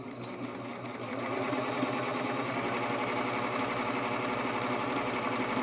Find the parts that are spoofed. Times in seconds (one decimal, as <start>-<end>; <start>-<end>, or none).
0.7-1.7